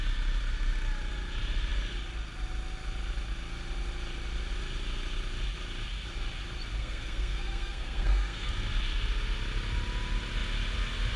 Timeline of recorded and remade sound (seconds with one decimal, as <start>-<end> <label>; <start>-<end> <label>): 0.0-6.8 recorded; 6.8-8.5 remade; 8.5-11.2 recorded